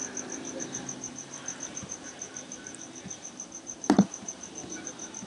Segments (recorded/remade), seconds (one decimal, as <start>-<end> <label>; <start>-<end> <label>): 0.0-0.6 recorded; 0.6-5.3 remade